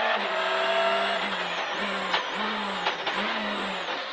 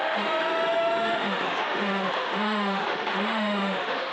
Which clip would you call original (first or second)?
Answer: first